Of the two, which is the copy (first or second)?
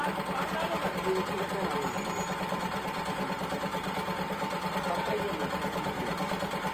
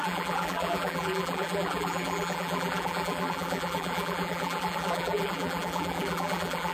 second